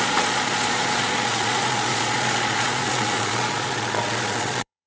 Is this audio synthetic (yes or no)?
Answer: yes